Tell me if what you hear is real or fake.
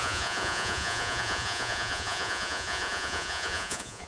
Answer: fake